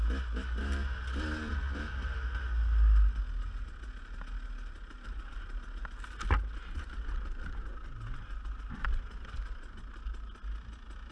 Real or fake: real